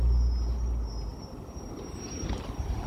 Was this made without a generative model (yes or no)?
yes